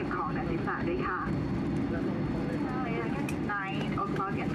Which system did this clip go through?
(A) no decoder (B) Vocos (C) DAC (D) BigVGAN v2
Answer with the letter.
A